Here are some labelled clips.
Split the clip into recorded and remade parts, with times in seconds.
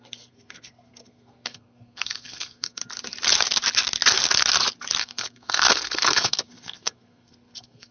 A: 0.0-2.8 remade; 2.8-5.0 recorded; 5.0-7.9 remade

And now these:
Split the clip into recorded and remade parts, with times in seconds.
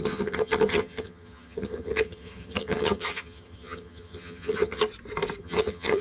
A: 0.0-4.8 remade; 4.8-5.4 recorded; 5.4-6.0 remade